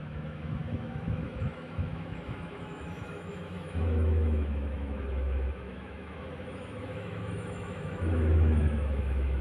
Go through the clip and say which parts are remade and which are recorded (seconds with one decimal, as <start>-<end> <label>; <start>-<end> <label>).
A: 0.0-9.4 remade